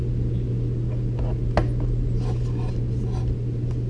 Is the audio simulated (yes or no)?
no